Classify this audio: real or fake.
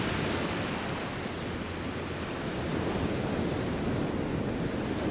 real